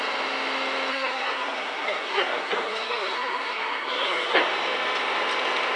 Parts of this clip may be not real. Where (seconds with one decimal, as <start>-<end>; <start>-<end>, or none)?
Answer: 0.9-4.4